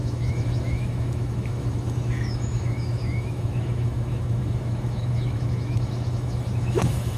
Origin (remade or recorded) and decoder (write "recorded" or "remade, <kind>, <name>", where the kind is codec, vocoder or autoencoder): remade, autoencoder, DAC-VAE